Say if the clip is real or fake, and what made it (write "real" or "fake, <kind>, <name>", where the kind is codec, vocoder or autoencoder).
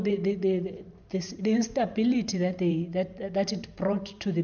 fake, vocoder, BigVGAN v2